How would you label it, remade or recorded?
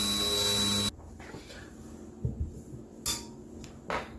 recorded